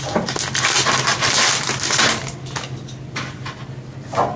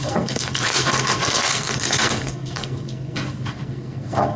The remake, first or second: second